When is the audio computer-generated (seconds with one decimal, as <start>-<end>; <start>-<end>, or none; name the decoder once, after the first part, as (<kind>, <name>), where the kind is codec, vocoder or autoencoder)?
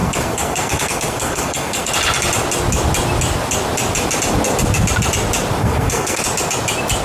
0.0-1.9 (codec, SNAC); 5.6-6.2